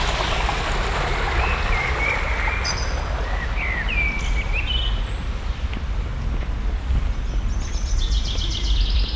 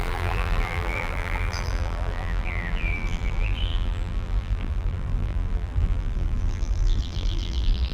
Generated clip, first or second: second